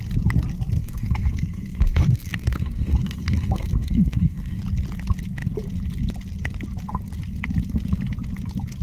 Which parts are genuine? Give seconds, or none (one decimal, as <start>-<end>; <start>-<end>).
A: 0.0-0.8; 4.6-8.8